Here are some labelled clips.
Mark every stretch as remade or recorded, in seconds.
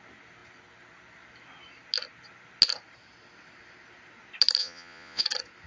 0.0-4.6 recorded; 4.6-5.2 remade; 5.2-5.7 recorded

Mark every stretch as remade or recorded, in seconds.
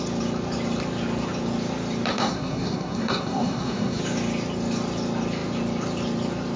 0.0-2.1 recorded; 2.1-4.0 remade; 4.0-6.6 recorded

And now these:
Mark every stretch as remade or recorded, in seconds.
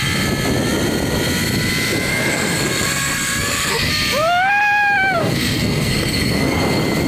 0.0-2.1 recorded; 2.1-3.9 remade; 3.9-5.2 recorded; 5.2-6.6 remade; 6.6-7.1 recorded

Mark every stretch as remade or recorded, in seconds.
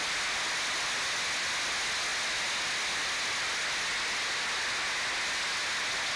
0.0-6.2 recorded